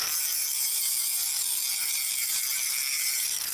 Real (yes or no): no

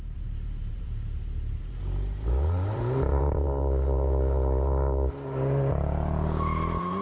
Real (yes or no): no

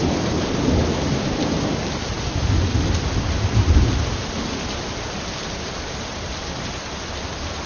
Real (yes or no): yes